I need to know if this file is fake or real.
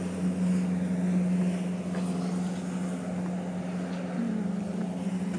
real